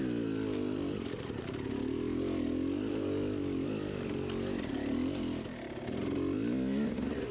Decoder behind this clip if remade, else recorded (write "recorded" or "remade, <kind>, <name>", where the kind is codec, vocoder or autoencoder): recorded